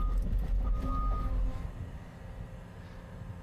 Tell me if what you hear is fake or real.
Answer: real